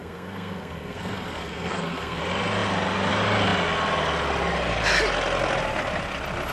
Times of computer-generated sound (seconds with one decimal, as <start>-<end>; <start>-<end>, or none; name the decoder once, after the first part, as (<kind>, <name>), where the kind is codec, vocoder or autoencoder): 0.0-2.2 (codec, SNAC)